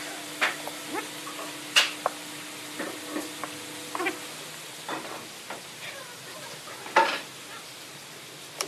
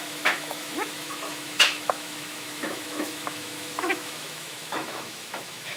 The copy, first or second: second